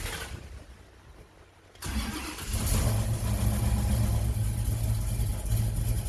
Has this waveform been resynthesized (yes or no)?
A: no